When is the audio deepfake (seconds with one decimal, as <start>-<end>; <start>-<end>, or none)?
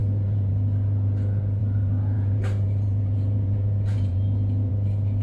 0.0-0.5; 1.6-4.7